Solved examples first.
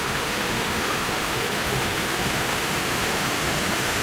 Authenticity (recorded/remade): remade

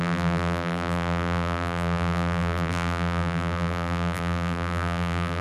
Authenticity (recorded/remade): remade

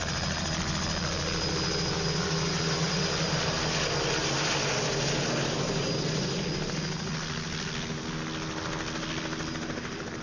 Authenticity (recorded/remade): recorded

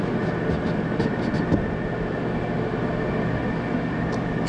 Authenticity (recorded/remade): recorded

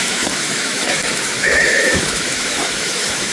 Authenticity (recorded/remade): remade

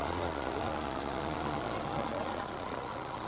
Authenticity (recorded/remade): remade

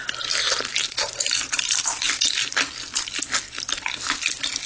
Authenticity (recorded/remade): recorded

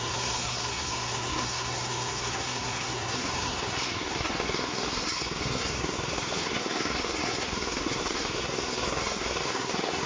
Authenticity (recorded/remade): remade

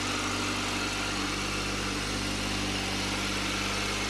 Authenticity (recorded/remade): recorded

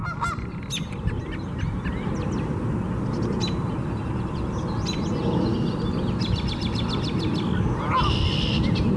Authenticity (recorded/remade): recorded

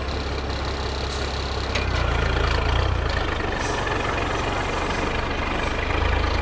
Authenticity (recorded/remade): recorded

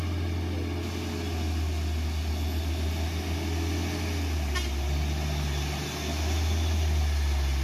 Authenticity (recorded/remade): recorded